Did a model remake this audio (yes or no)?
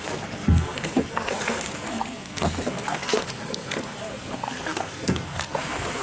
yes